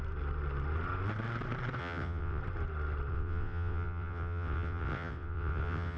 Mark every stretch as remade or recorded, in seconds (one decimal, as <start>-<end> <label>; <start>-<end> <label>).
0.0-1.8 recorded; 1.8-2.4 remade; 2.4-3.1 recorded; 3.1-6.0 remade